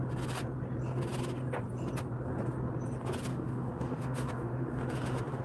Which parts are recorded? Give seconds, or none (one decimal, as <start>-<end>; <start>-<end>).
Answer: 0.0-3.3